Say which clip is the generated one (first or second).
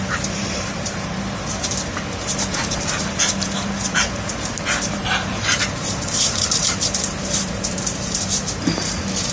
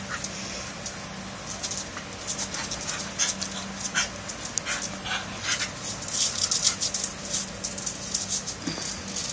first